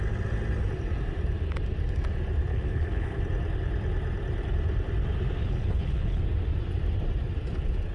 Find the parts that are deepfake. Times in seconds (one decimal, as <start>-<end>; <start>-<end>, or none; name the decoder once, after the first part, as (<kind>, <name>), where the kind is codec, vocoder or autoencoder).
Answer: 2.5-3.2 (codec, HILCodec); 5.4-6.2